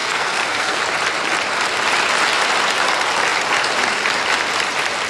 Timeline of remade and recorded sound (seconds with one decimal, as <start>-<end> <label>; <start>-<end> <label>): 0.0-0.8 remade; 0.8-5.1 recorded

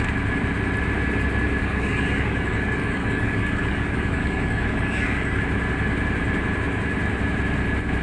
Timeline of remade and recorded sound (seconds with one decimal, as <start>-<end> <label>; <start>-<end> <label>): 0.0-1.6 recorded; 1.6-5.4 remade; 5.4-8.0 recorded

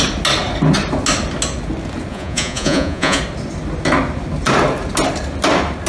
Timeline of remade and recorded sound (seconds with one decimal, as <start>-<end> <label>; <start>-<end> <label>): 0.0-2.1 recorded; 2.1-3.2 remade; 3.2-5.9 recorded

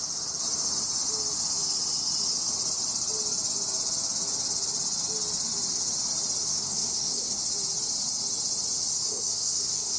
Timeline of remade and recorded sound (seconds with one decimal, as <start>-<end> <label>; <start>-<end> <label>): 0.0-6.4 recorded; 6.4-7.4 remade; 7.4-8.9 recorded; 8.9-10.0 remade

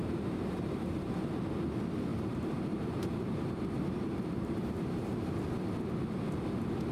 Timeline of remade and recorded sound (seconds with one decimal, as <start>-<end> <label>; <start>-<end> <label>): 0.0-1.3 remade; 1.3-2.1 recorded; 2.1-5.4 remade; 5.4-6.9 recorded